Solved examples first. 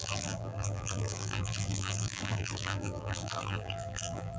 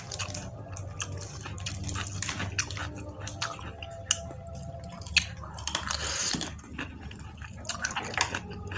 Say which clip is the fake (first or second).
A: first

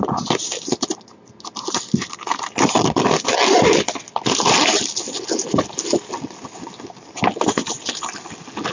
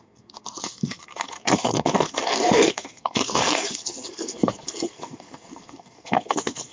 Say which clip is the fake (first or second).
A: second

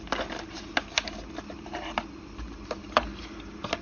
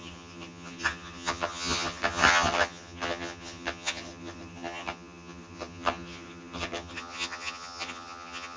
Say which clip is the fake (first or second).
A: second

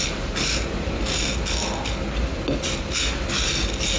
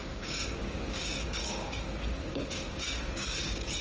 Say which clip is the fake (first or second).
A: second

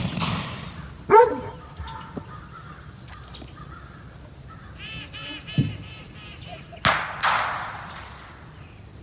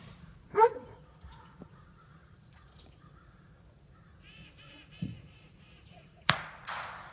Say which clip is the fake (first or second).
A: second